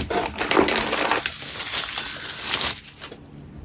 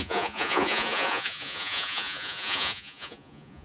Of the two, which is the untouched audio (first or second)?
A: first